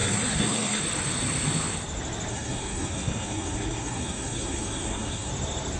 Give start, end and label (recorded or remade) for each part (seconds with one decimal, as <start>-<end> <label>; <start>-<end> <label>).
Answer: 0.0-0.8 remade; 0.8-2.3 recorded; 2.3-5.3 remade; 5.3-5.8 recorded